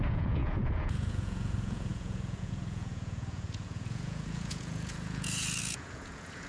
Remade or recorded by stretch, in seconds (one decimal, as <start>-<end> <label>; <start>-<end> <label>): 0.0-6.5 remade